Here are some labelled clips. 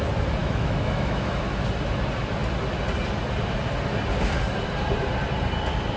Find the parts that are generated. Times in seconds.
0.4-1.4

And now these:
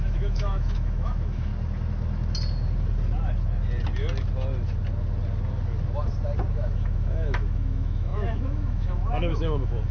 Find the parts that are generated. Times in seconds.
0.0-1.5; 6.5-9.9

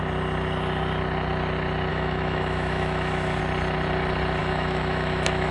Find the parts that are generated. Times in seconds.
1.9-3.4; 4.4-5.5

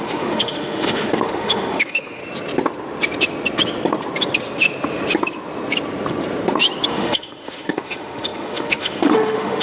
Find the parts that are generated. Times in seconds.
0.0-2.2; 6.9-9.6

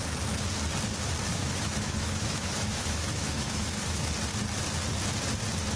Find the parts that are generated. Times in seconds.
1.3-4.1